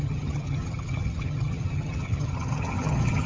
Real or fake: fake